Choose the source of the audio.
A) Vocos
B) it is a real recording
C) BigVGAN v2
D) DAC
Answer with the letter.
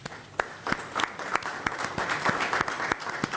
B